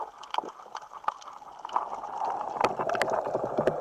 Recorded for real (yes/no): yes